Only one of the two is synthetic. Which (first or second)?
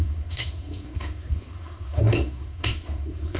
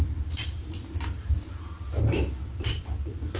first